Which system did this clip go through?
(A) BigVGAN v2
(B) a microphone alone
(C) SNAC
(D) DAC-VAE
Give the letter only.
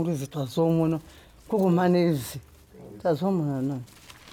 B